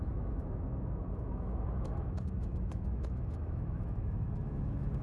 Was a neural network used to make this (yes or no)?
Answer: yes